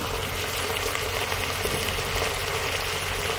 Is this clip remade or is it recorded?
recorded